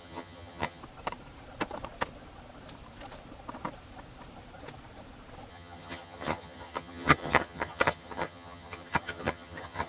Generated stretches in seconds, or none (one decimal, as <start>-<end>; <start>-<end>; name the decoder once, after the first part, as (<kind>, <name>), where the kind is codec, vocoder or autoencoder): 0.0-0.8 (vocoder, HiFi-GAN); 5.5-9.9